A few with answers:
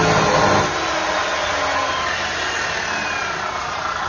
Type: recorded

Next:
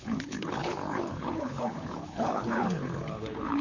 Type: remade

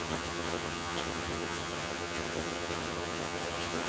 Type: remade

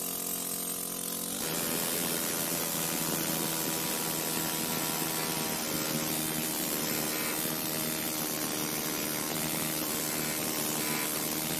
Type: recorded